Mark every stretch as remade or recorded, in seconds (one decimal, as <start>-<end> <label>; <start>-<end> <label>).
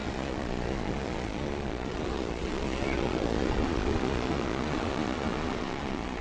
0.0-6.2 remade